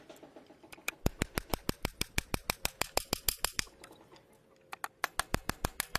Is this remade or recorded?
recorded